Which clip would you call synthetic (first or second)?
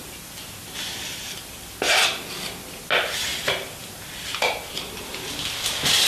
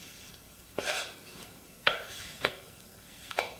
second